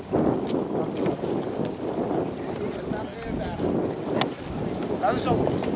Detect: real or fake real